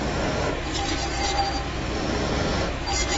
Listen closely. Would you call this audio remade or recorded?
recorded